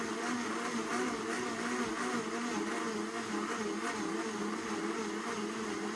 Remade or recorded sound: recorded